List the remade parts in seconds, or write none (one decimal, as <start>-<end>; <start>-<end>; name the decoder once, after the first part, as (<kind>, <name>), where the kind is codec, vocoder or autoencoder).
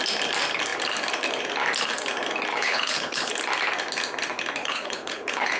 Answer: 2.5-3.3 (codec, HILCodec); 4.6-5.6